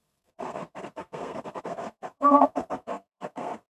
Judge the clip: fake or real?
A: fake